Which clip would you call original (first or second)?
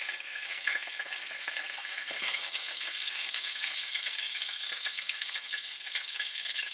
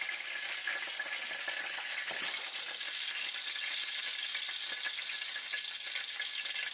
second